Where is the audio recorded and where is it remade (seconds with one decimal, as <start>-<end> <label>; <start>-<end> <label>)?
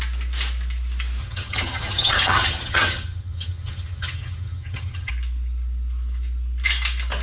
0.0-1.2 recorded; 1.2-5.1 remade; 5.1-7.2 recorded